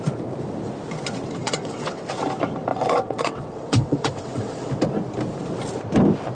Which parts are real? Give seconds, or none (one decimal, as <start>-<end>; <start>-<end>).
0.0-1.4; 2.0-2.7; 4.7-6.3